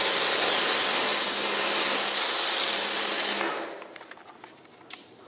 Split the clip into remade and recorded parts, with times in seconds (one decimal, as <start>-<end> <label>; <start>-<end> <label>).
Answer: 0.0-5.3 recorded